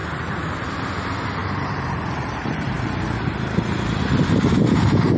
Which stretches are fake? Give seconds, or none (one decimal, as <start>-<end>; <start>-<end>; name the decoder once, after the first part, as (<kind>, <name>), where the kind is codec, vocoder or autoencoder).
0.0-0.5 (vocoder, BigVGAN v2); 1.4-4.5